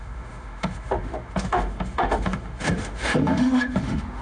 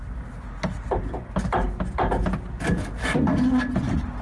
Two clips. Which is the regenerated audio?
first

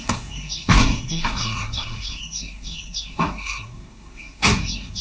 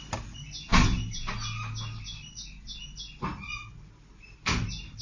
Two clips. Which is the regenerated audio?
first